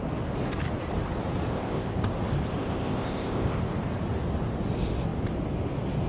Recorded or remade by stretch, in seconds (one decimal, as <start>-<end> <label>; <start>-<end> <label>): 0.0-1.5 recorded; 1.5-2.1 remade; 2.1-2.6 recorded; 2.6-3.6 remade; 3.6-6.1 recorded